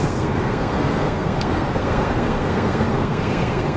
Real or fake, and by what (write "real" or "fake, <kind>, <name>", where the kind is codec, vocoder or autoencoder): fake, codec, SNAC